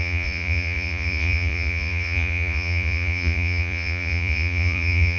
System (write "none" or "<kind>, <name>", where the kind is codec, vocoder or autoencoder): vocoder, Vocos